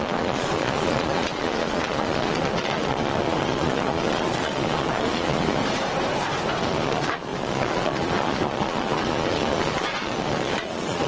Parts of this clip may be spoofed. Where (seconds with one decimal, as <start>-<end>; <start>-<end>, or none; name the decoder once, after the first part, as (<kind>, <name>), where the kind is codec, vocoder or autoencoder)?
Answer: 0.0-5.6 (vocoder, Vocos); 6.6-11.1